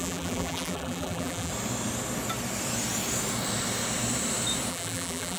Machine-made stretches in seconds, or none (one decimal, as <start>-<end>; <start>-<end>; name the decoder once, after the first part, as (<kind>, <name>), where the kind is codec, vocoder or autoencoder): 0.0-1.5 (vocoder, BigVGAN v2); 4.7-5.4